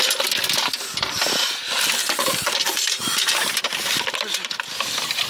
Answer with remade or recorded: remade